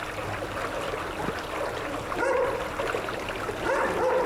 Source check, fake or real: real